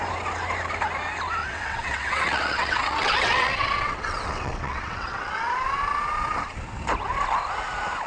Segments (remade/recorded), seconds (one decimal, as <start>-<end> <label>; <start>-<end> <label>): 0.0-1.4 recorded; 1.4-5.4 remade; 5.4-8.1 recorded